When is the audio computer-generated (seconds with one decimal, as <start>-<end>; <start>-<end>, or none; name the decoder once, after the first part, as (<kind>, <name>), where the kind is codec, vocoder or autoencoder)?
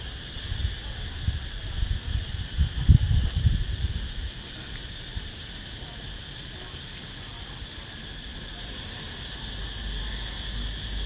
5.1-6.1 (vocoder, BigVGAN v2)